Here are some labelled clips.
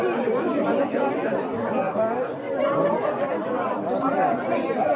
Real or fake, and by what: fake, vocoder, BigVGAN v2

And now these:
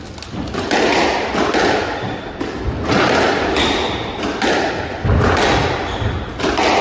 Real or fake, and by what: real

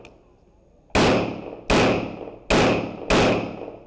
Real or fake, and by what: real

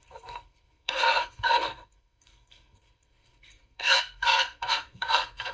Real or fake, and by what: fake, codec, SNAC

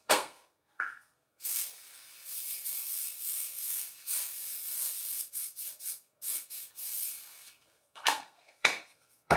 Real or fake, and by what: fake, codec, SNAC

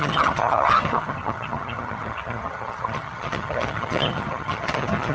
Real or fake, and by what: fake, vocoder, HiFi-GAN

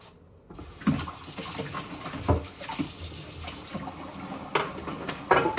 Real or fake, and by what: real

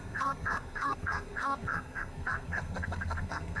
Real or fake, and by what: fake, codec, SNAC